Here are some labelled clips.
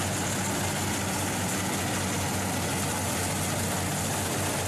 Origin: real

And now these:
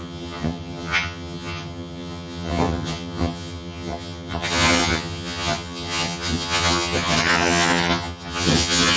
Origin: fake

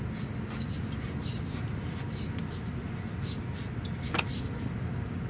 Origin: real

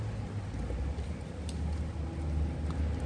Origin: real